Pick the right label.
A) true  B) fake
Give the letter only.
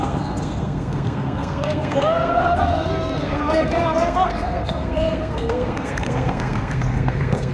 B